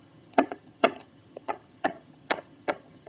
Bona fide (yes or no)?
no